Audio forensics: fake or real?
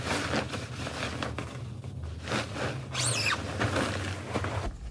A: real